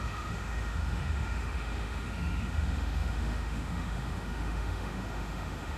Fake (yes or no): yes